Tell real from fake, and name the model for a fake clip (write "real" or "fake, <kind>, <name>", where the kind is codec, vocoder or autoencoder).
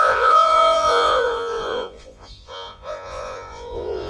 fake, vocoder, Vocos